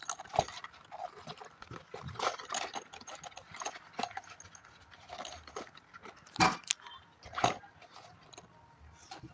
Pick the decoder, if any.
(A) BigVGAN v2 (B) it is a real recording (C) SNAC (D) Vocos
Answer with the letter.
B